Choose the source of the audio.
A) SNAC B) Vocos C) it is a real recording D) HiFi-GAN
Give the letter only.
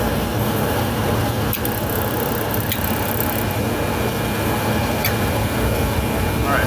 C